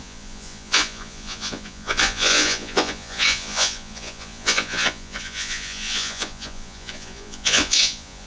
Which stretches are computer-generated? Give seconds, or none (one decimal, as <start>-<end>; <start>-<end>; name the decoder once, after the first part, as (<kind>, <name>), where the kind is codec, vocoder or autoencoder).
0.0-8.3 (vocoder, Vocos)

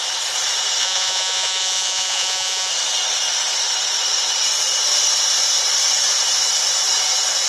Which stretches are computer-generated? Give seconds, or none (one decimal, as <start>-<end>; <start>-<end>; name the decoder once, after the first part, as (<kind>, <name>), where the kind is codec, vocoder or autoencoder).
0.8-2.7 (vocoder, Vocos)

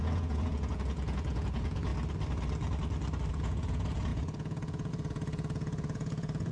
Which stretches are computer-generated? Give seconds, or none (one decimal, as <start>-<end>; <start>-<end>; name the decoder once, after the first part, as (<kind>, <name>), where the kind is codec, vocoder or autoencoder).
0.0-1.9 (vocoder, Vocos); 3.3-6.5

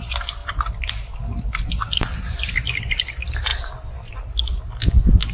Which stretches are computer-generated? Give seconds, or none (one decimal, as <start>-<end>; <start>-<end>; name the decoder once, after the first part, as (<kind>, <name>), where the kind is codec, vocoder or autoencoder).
none